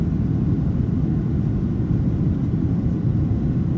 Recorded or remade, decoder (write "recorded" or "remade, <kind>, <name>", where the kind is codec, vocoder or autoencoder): remade, vocoder, BigVGAN v2